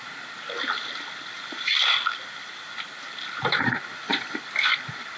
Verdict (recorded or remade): recorded